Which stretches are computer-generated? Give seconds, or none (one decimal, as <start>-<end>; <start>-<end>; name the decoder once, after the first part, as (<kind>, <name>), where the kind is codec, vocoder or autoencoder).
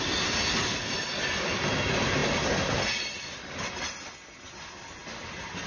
none